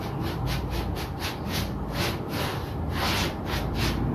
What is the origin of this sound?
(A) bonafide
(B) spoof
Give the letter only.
B